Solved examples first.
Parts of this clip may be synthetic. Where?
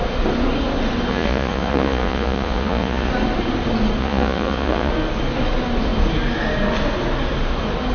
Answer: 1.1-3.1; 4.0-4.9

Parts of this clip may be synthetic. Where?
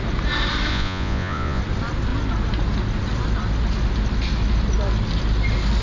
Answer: 0.7-1.6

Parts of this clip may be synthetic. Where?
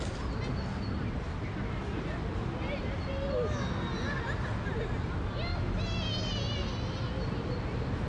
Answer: none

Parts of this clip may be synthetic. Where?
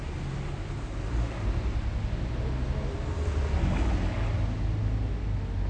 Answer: none